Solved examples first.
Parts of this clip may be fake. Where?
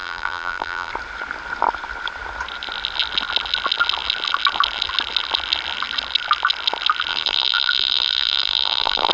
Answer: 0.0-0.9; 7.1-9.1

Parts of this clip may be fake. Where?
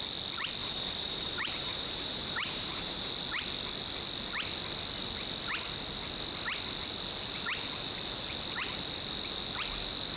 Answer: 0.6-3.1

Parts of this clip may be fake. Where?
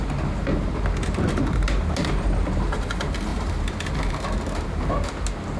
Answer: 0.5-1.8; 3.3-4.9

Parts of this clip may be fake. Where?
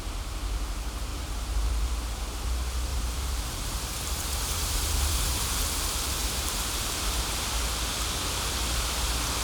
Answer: 1.1-2.1; 2.9-5.6; 6.2-7.5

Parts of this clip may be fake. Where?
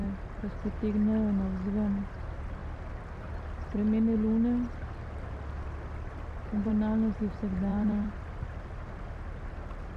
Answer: 7.7-9.1